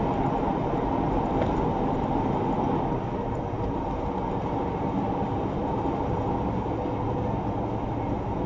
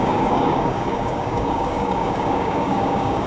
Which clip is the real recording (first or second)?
first